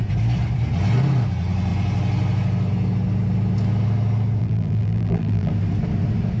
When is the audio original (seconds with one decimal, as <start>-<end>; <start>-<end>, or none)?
0.0-4.4; 5.5-6.4